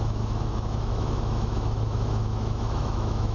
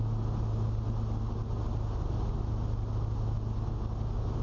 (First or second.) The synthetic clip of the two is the first